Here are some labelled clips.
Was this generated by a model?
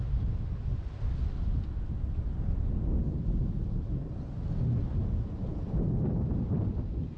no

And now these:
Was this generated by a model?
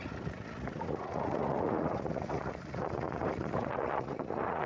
yes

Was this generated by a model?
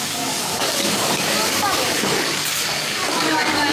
yes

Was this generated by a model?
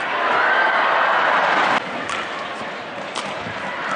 no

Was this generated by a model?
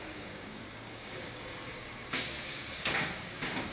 yes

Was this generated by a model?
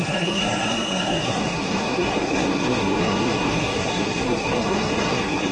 yes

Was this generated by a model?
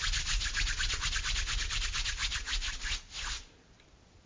no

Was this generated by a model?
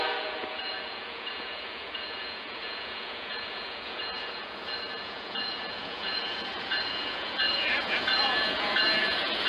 yes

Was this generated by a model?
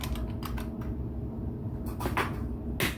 no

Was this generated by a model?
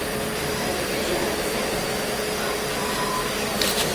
yes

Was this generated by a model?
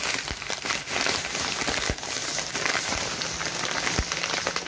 no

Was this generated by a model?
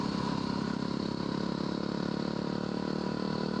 no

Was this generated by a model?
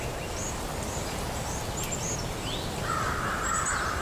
no